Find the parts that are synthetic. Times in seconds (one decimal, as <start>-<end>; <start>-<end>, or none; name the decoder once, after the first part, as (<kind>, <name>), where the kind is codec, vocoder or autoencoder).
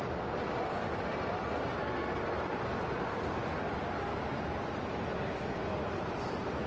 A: none